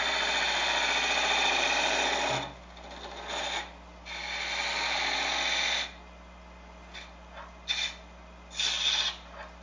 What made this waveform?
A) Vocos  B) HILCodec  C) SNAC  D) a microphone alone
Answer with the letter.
D